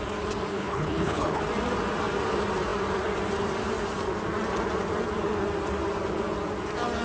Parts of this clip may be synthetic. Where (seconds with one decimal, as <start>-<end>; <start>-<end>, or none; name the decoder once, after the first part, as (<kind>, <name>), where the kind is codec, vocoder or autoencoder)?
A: 0.5-1.4 (codec, HILCodec)